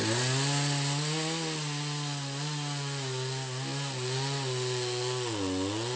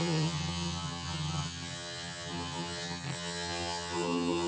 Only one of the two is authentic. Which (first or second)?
first